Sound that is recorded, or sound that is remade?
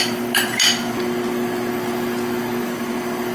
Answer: recorded